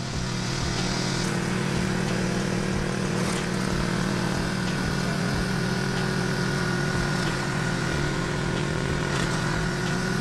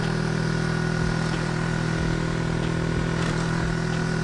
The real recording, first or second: second